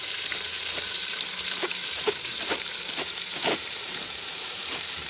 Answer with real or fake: fake